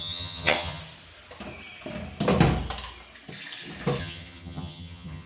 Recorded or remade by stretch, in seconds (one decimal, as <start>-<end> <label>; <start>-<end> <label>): 0.0-0.8 remade; 0.8-4.0 recorded; 4.0-5.3 remade